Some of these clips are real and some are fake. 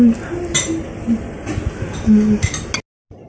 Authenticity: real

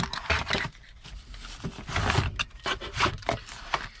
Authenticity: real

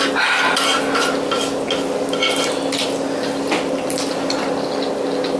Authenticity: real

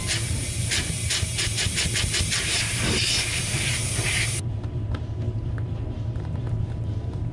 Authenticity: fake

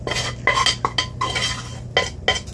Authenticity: real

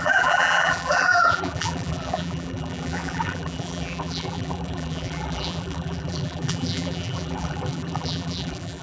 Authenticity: fake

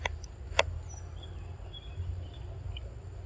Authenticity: real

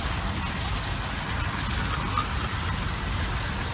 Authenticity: real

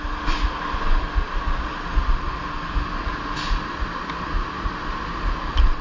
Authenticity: real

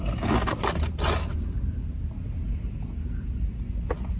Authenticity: real